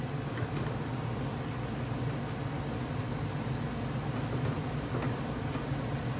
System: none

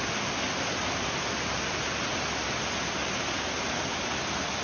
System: none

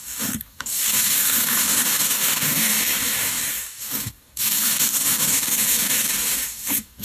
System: codec, DAC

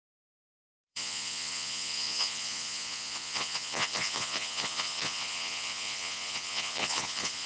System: vocoder, Vocos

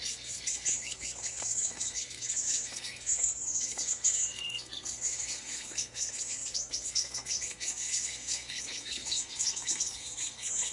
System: codec, SNAC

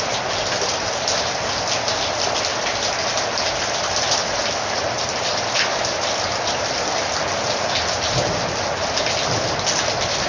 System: none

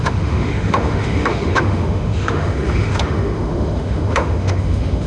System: autoencoder, DAC-VAE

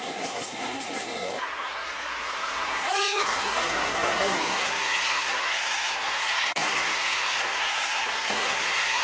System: codec, SNAC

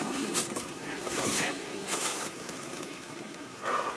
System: codec, SNAC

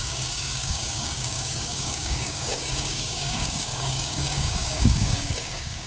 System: codec, DAC